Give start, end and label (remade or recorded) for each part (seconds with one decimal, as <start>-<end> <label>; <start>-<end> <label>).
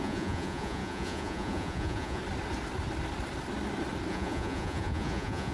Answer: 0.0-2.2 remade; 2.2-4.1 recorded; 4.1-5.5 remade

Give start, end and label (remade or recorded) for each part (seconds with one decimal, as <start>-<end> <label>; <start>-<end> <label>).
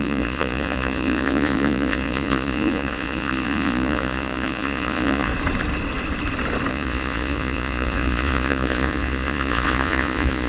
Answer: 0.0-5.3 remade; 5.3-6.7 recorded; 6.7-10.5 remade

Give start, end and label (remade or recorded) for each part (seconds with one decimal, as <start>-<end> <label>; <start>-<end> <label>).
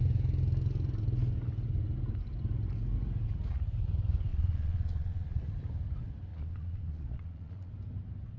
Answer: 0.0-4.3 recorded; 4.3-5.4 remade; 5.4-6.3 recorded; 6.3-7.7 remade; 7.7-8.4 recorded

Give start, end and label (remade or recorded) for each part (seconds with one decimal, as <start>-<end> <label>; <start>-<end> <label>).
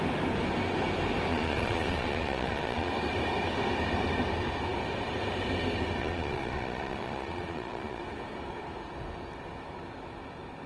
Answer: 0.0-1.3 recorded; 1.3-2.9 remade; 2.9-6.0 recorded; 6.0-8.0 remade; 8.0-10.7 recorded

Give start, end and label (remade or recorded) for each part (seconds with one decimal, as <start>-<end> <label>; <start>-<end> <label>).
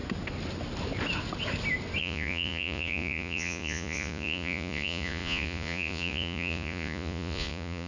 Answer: 0.0-2.0 recorded; 2.0-7.9 remade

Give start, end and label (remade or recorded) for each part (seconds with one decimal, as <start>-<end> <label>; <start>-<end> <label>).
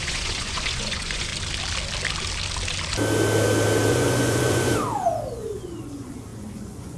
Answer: 0.0-1.3 remade; 1.3-3.9 recorded; 3.9-4.7 remade; 4.7-5.3 recorded; 5.3-7.0 remade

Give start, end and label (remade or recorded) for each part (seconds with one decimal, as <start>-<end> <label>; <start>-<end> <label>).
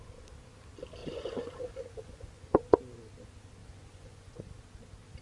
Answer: 0.0-1.0 recorded; 1.0-2.8 remade; 2.8-3.6 recorded; 3.6-4.4 remade; 4.4-5.2 recorded